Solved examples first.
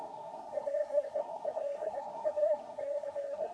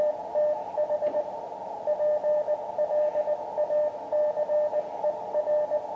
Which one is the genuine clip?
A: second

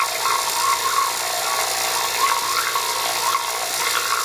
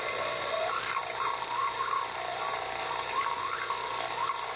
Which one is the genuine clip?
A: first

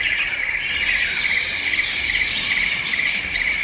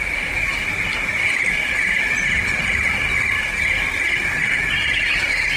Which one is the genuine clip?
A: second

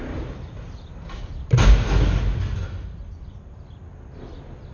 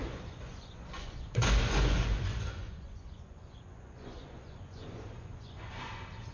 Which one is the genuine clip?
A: first